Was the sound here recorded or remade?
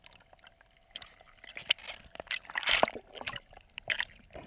recorded